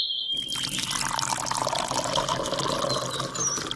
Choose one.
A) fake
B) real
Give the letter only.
B